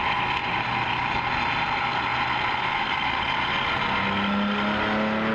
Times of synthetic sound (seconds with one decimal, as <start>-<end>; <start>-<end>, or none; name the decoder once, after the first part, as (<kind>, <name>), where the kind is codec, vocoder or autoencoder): none